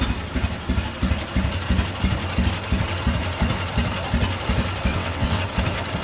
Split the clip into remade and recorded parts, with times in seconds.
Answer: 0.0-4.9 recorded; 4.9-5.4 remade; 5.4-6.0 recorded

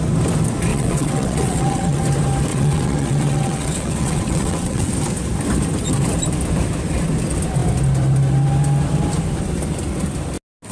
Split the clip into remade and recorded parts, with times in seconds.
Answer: 0.0-0.7 recorded; 0.7-2.0 remade; 2.0-2.5 recorded; 2.5-4.9 remade; 4.9-10.7 recorded

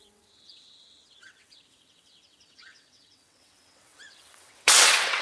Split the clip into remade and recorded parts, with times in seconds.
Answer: 0.0-5.2 remade

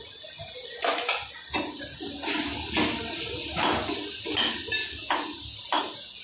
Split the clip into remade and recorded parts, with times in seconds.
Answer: 0.0-6.2 recorded

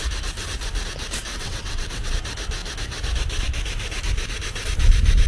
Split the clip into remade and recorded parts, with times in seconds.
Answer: 0.0-1.3 recorded; 1.3-2.1 remade; 2.1-5.3 recorded

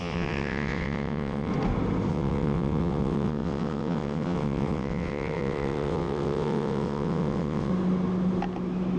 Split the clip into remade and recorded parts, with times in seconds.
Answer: 0.0-1.5 remade; 1.5-2.1 recorded; 2.1-7.7 remade; 7.7-9.0 recorded

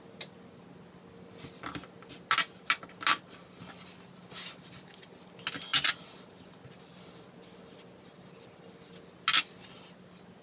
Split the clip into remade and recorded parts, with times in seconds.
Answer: 0.0-10.4 recorded